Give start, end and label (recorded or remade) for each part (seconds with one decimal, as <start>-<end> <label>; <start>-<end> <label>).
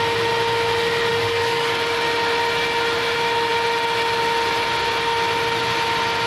0.0-1.1 recorded; 1.1-1.9 remade; 1.9-6.3 recorded